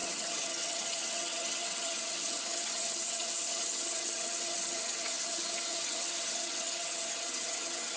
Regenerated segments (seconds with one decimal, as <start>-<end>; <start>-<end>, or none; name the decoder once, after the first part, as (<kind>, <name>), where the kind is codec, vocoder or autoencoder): 0.0-8.0 (vocoder, HiFi-GAN)